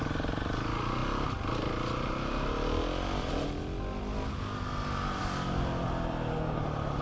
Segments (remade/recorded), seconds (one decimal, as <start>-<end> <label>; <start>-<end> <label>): 0.0-7.0 recorded